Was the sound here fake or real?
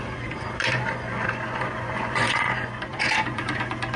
fake